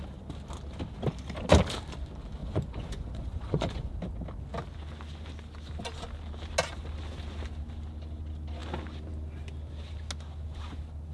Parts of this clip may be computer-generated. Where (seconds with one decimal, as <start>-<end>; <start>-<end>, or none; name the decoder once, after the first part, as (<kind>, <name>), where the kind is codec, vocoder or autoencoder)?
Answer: 2.4-3.9 (vocoder, Vocos)